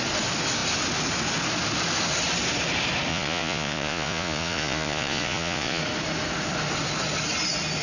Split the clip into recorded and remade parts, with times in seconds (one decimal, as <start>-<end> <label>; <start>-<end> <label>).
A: 0.0-3.1 recorded; 3.1-5.8 remade; 5.8-7.8 recorded